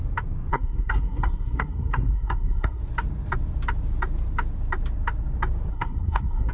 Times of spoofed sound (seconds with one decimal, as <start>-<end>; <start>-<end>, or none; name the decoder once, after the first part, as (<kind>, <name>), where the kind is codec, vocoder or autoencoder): 0.5-2.8 (codec, SNAC); 5.7-6.5